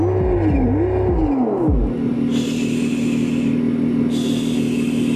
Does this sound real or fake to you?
real